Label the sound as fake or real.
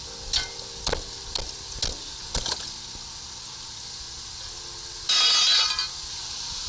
real